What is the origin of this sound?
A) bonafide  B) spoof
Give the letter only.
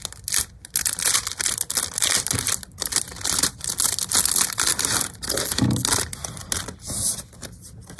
A